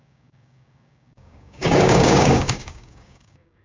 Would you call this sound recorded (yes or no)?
no